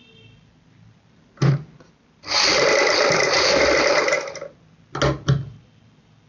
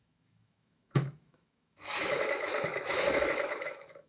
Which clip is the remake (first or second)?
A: second